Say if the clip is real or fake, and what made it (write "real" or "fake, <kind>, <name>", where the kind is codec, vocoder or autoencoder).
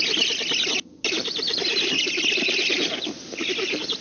real